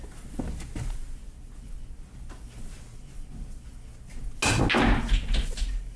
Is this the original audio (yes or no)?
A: yes